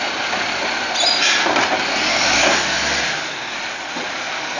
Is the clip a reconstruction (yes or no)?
no